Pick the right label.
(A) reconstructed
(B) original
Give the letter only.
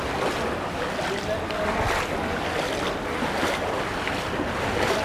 B